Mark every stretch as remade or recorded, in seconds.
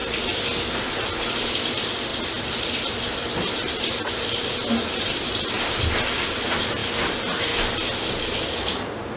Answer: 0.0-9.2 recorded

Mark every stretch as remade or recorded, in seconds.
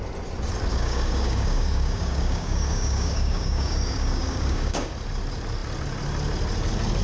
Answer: 0.0-0.7 recorded; 0.7-4.9 remade; 4.9-7.0 recorded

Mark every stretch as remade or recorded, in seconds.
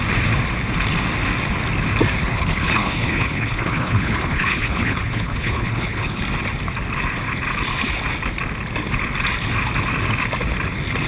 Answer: 0.0-2.2 recorded; 2.2-6.2 remade; 6.2-11.1 recorded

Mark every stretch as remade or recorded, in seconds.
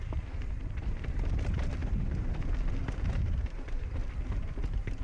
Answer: 0.0-4.0 remade; 4.0-5.0 recorded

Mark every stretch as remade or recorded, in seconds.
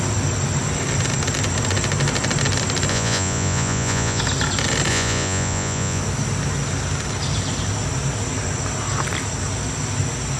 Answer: 0.0-2.9 recorded; 2.9-4.2 remade; 4.2-4.9 recorded; 4.9-6.0 remade; 6.0-10.4 recorded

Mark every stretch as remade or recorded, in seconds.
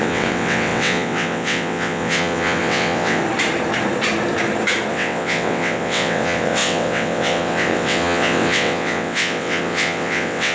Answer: 0.0-3.2 remade; 3.2-4.9 recorded; 4.9-10.5 remade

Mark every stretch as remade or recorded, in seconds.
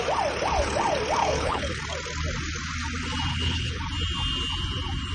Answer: 0.0-1.2 recorded; 1.2-1.8 remade; 1.8-3.3 recorded; 3.3-3.8 remade; 3.8-5.1 recorded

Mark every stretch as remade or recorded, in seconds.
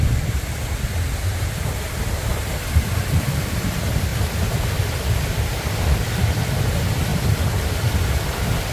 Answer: 0.0-4.1 remade; 4.1-4.7 recorded; 4.7-7.1 remade; 7.1-7.7 recorded; 7.7-8.7 remade